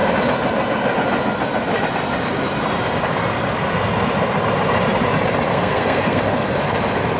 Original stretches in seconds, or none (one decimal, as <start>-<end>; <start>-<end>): 0.0-5.5; 6.2-7.2